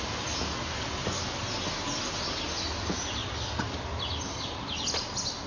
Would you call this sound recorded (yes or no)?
yes